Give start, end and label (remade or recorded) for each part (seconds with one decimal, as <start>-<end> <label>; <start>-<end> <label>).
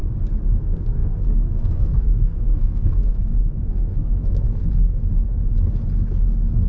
0.0-0.6 recorded; 0.6-5.4 remade; 5.4-6.7 recorded